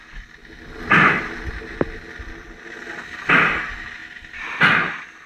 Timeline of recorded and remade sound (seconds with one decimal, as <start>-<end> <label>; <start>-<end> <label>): 0.0-5.3 recorded